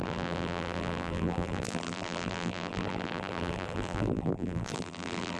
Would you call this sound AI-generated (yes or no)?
yes